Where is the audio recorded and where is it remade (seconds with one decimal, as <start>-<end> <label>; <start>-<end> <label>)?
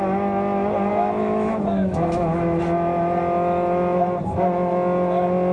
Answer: 0.0-0.9 recorded; 0.9-2.6 remade; 2.6-5.5 recorded